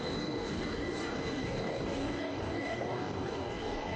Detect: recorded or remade remade